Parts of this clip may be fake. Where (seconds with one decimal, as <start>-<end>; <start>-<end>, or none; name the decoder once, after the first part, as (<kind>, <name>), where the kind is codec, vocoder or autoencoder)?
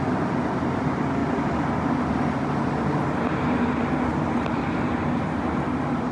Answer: none